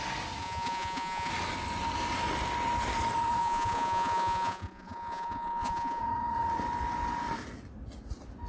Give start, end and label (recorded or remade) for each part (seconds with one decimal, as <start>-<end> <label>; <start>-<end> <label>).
0.0-0.4 recorded; 0.4-1.3 remade; 1.3-3.4 recorded; 3.4-6.0 remade; 6.0-8.5 recorded